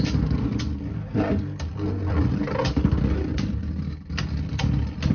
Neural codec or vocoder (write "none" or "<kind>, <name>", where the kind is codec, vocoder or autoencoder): none